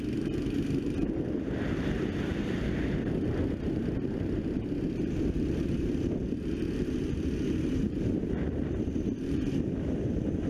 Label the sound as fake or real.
fake